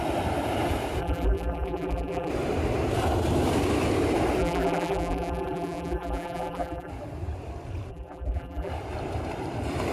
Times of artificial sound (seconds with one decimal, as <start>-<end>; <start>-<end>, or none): 1.0-2.3; 4.4-6.9; 7.9-8.7